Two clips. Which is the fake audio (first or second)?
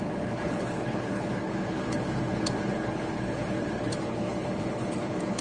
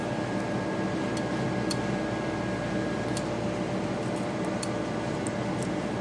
first